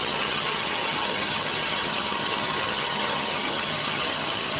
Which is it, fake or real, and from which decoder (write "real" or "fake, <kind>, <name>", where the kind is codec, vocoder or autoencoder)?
fake, vocoder, HiFi-GAN